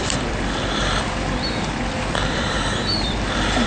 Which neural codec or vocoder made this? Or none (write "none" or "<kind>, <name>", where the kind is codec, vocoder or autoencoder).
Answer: vocoder, BigVGAN v2